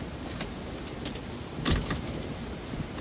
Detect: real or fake real